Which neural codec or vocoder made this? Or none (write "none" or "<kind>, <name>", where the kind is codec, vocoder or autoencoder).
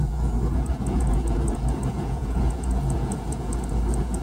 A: vocoder, Vocos